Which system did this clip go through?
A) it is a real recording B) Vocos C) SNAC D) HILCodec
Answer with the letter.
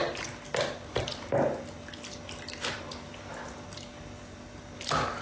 A